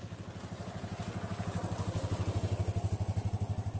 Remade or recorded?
recorded